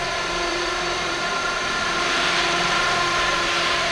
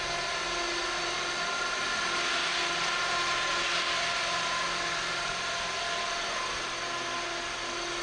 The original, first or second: second